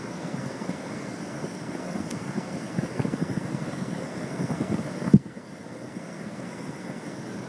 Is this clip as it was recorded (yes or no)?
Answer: no